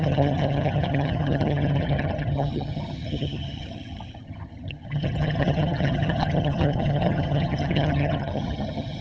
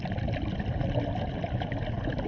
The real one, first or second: second